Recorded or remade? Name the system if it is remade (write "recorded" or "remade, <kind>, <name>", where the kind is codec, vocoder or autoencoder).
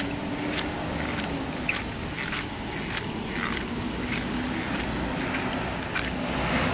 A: recorded